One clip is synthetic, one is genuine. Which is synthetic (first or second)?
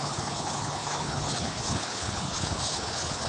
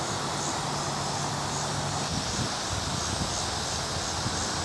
first